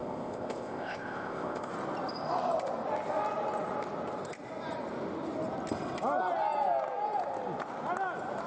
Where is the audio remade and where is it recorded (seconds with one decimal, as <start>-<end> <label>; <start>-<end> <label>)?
0.0-1.7 remade; 1.7-8.5 recorded